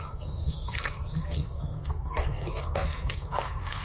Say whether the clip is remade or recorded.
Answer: remade